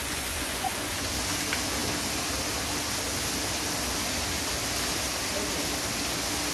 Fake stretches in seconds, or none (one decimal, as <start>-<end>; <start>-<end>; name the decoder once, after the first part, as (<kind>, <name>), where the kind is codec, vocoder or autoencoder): 0.0-1.1 (vocoder, Vocos)